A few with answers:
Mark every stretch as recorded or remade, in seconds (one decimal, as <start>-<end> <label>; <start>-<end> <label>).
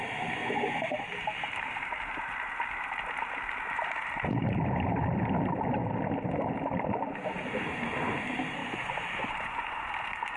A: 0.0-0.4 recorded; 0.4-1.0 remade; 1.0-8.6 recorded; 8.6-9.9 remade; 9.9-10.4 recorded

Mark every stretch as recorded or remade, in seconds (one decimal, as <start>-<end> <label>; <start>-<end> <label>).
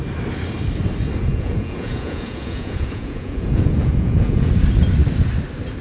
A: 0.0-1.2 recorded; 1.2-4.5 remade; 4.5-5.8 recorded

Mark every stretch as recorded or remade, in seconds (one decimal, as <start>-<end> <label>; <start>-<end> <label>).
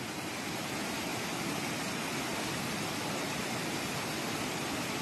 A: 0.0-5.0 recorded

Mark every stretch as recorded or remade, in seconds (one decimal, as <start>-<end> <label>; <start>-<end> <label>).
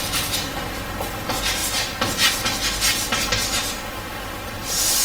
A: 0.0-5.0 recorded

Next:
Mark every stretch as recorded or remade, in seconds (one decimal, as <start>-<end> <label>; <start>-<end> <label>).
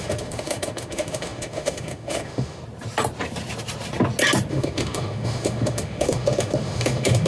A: 0.0-2.6 remade; 2.6-4.5 recorded; 4.5-7.3 remade